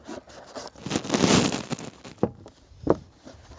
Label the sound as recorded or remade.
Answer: recorded